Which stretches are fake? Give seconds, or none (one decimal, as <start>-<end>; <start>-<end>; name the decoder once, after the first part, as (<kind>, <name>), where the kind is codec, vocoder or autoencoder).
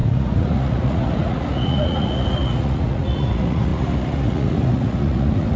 0.0-5.6 (vocoder, Vocos)